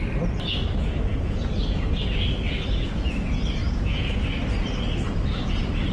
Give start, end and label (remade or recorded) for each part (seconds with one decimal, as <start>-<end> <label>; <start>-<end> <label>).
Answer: 0.0-1.1 recorded; 1.1-1.9 remade; 1.9-3.6 recorded; 3.6-4.3 remade; 4.3-5.9 recorded